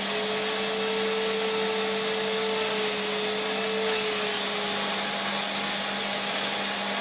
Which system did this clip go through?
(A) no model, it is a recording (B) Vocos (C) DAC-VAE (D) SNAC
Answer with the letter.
A